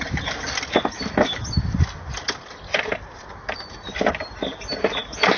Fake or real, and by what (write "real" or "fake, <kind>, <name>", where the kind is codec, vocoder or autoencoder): real